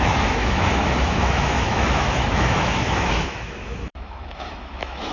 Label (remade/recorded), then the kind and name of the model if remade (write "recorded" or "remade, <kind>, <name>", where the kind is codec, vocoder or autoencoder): remade, autoencoder, DAC-VAE